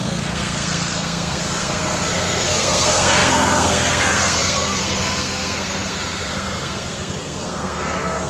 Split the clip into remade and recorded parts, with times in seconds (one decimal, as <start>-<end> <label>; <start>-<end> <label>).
0.0-8.3 remade

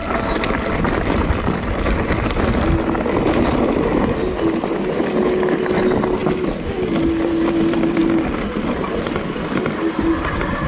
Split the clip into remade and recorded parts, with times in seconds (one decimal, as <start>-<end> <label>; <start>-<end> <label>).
0.0-10.7 recorded

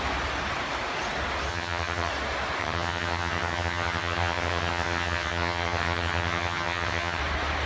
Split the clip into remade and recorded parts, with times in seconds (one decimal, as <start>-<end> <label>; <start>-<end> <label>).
0.0-1.5 recorded; 1.5-2.1 remade; 2.1-2.6 recorded; 2.6-7.2 remade; 7.2-7.7 recorded